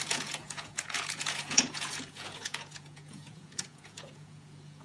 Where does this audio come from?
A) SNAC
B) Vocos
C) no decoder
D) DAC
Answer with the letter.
B